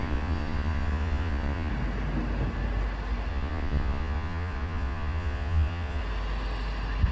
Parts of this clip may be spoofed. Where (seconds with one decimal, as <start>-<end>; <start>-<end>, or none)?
0.0-1.7; 3.3-6.0